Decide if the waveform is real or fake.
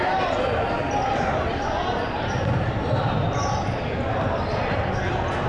real